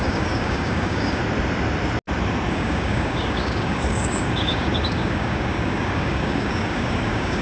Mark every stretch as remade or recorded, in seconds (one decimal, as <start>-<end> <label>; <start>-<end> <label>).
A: 0.0-1.2 remade; 1.2-2.5 recorded; 2.5-7.4 remade